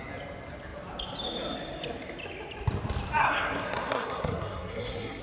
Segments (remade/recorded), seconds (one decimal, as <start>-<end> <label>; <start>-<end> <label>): 0.0-3.2 recorded; 3.2-5.2 remade